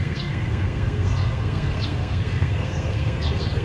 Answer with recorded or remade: remade